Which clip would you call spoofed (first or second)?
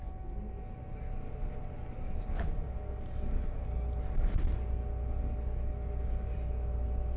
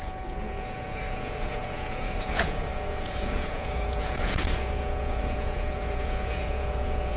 second